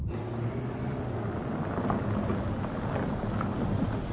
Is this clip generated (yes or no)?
no